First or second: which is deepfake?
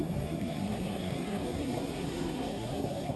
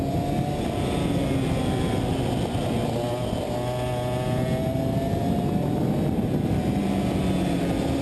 first